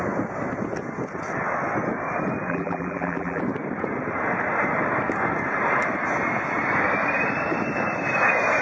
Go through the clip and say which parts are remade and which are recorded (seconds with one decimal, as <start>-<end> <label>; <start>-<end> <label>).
0.0-2.5 recorded; 2.5-3.4 remade; 3.4-8.6 recorded

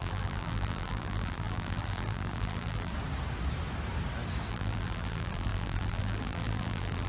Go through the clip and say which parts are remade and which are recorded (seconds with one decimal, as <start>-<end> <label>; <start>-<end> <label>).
0.0-2.9 remade; 2.9-4.5 recorded; 4.5-7.1 remade

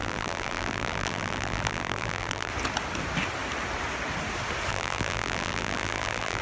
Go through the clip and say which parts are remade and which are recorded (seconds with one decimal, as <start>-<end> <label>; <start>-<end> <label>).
0.0-2.5 remade; 2.5-4.7 recorded; 4.7-6.4 remade

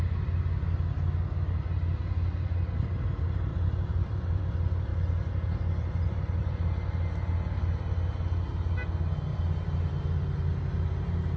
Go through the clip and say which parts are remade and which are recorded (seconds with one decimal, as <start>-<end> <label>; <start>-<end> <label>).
0.0-3.5 recorded; 3.5-4.4 remade; 4.4-4.9 recorded; 4.9-6.5 remade; 6.5-9.3 recorded; 9.3-9.9 remade; 9.9-11.4 recorded

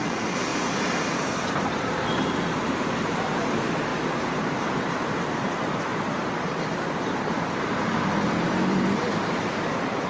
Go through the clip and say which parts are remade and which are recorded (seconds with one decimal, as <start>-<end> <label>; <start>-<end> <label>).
0.0-0.5 remade; 0.5-1.4 recorded; 1.4-3.9 remade; 3.9-4.4 recorded; 4.4-10.1 remade

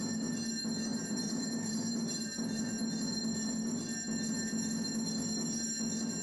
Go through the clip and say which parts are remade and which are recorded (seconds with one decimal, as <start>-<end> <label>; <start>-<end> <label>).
0.0-0.9 recorded; 0.9-2.7 remade; 2.7-6.2 recorded